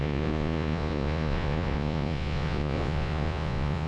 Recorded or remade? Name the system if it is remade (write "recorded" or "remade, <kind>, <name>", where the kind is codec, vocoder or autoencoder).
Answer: remade, vocoder, Vocos